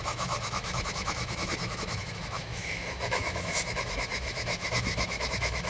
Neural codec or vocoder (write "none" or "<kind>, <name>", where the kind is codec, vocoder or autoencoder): autoencoder, DAC-VAE